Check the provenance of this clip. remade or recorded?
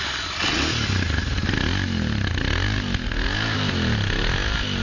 recorded